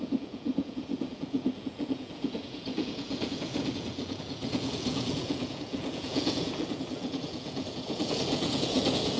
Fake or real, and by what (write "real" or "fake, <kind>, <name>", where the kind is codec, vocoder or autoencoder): fake, vocoder, Vocos